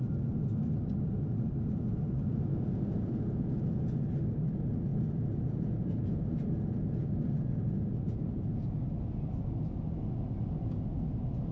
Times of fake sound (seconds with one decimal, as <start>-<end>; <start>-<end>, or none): 2.5-3.8; 4.9-8.6